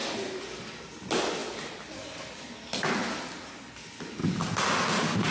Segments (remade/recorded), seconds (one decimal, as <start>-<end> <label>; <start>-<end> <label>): 0.0-5.3 recorded